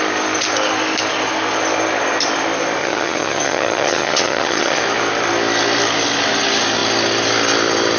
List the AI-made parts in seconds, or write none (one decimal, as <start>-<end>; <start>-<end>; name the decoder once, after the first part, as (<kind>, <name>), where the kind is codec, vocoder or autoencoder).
2.8-4.8 (vocoder, HiFi-GAN)